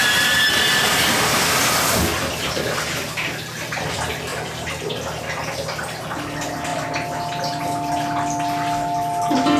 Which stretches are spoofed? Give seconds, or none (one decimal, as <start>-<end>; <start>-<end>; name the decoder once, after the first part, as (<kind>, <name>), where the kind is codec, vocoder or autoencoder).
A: 0.0-2.0 (vocoder, BigVGAN v2)